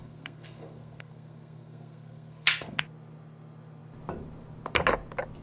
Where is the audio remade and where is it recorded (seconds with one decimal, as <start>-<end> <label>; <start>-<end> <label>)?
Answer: 0.0-2.8 remade; 2.8-5.4 recorded